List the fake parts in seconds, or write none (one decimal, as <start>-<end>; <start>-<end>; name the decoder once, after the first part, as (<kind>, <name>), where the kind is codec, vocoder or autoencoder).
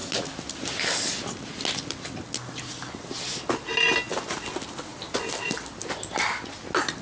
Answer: 4.9-5.6 (vocoder, BigVGAN v2)